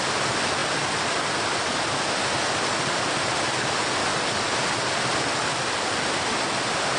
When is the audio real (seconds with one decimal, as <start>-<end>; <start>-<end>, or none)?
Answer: 0.0-7.0

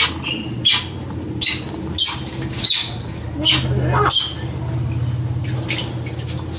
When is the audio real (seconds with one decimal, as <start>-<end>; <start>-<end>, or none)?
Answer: 0.0-6.6

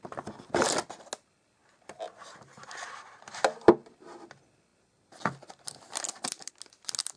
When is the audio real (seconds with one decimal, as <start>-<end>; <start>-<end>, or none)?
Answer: 0.0-7.2